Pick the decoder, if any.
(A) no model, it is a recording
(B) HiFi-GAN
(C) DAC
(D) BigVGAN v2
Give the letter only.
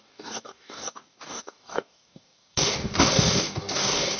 C